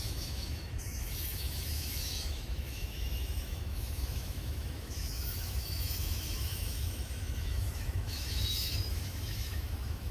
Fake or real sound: fake